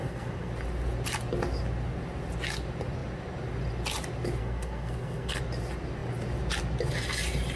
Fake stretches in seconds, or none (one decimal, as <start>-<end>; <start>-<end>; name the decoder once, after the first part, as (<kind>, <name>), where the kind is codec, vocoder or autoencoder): 0.0-0.5 (codec, SNAC); 4.4-5.4